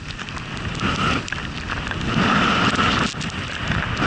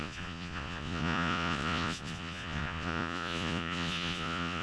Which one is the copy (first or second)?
second